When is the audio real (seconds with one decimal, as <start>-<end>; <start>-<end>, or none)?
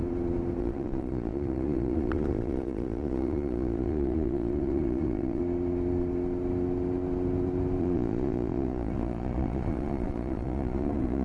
0.0-0.6; 5.4-7.8